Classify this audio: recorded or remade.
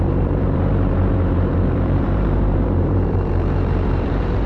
remade